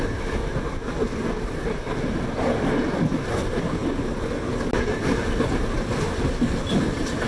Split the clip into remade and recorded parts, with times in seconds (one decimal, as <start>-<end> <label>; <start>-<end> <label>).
0.0-7.3 recorded